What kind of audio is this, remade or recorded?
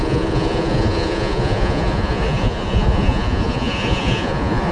remade